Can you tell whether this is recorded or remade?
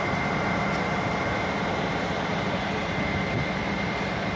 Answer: remade